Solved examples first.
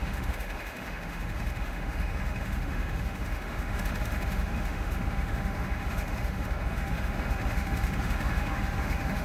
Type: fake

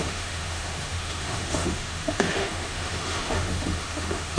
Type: fake